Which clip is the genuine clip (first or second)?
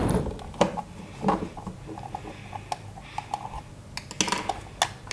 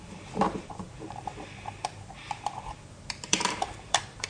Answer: first